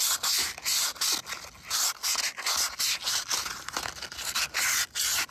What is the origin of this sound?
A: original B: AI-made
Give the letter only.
A